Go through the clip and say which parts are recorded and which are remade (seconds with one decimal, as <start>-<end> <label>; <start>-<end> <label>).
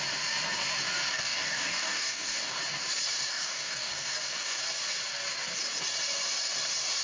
0.0-1.1 recorded; 1.1-2.6 remade; 2.6-3.3 recorded; 3.3-4.6 remade; 4.6-7.0 recorded